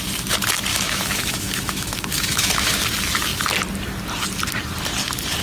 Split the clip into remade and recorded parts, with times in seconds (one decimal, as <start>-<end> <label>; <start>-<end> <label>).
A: 0.0-0.7 recorded; 0.7-2.8 remade; 2.8-5.4 recorded